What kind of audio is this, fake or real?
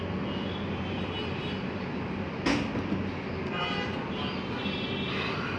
real